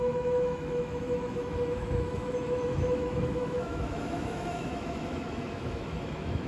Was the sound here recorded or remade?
remade